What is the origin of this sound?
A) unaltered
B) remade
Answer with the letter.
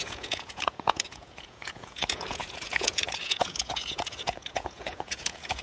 B